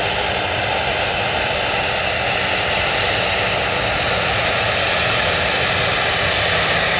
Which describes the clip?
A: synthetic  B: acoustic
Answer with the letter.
B